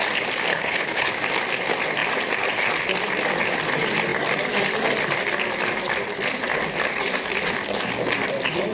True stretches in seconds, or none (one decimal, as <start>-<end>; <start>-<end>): 0.0-0.5; 1.1-8.7